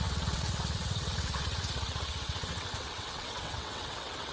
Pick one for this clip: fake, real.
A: fake